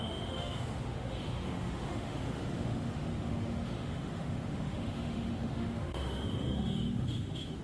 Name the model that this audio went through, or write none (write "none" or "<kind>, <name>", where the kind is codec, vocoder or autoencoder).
autoencoder, DAC-VAE